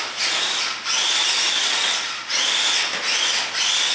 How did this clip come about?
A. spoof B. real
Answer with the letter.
B